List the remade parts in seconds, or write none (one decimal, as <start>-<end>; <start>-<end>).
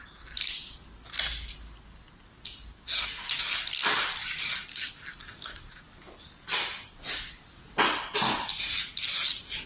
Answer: none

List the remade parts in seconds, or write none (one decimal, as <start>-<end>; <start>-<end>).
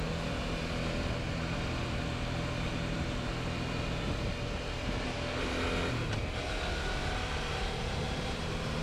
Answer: 7.0-8.8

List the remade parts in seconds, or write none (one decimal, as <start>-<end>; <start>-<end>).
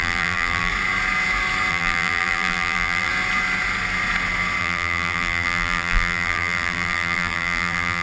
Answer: 0.0-0.7; 1.7-3.1; 4.6-8.0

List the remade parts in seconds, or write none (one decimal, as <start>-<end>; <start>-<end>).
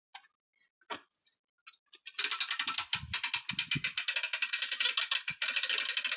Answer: 4.3-4.9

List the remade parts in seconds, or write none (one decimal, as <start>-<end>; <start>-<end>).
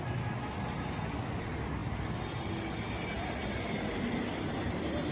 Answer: none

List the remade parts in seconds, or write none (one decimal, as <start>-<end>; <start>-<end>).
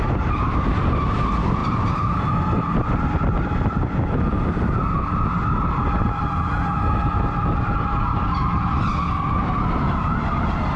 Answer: 1.6-2.8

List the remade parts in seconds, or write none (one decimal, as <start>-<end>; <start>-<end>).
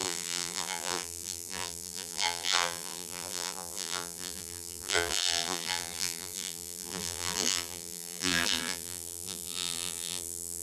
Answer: 0.0-10.6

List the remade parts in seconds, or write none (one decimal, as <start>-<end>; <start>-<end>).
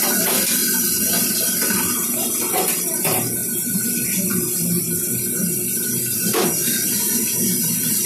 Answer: 0.6-1.1